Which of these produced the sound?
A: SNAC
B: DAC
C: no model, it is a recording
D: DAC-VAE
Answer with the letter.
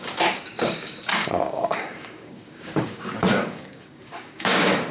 B